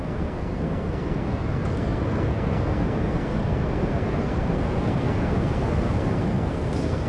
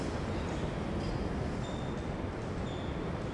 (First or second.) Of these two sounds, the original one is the second